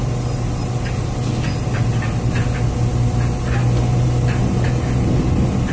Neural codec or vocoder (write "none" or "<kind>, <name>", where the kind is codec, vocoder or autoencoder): none